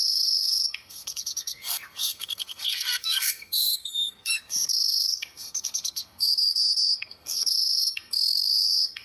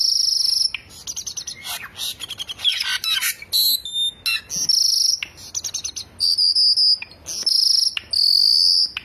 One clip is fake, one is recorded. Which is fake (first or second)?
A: first